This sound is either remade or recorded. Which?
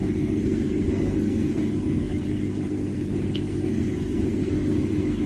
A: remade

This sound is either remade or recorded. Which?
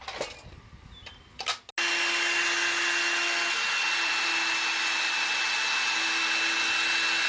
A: recorded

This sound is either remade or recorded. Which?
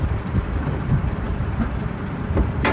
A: remade